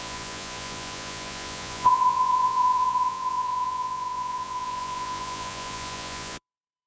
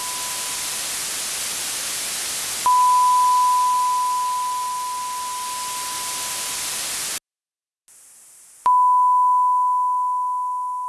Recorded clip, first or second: second